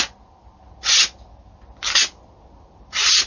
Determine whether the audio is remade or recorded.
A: recorded